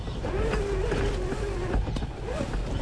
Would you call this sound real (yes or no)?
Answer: yes